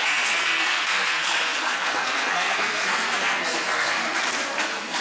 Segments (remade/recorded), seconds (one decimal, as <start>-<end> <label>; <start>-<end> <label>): 0.0-4.0 remade; 4.0-4.6 recorded; 4.6-5.0 remade